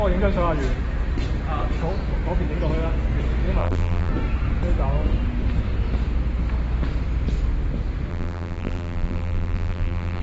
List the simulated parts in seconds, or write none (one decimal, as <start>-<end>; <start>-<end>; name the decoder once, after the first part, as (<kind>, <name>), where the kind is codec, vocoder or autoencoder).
3.6-4.1 (vocoder, BigVGAN v2); 8.1-10.2